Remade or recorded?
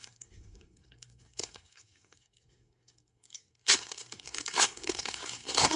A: remade